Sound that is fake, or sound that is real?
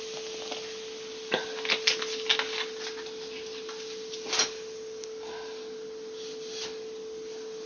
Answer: real